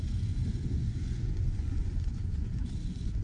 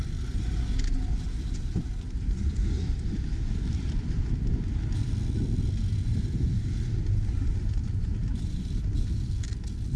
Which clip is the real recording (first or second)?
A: second